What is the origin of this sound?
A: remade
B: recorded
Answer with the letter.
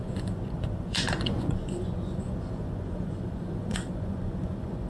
A